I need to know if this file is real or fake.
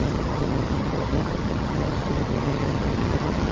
fake